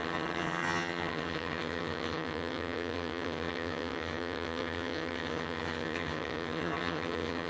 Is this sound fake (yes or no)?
yes